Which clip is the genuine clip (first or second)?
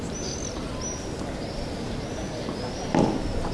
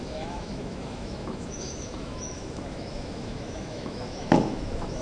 first